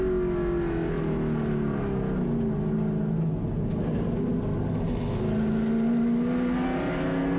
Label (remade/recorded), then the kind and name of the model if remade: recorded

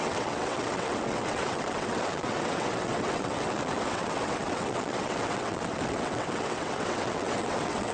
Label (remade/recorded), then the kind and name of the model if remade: remade, vocoder, WaveNeXt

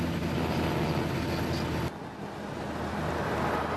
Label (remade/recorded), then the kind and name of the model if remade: recorded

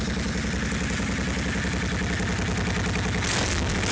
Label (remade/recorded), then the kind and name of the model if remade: recorded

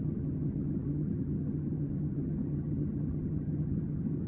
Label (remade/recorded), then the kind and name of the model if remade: remade, vocoder, HiFi-GAN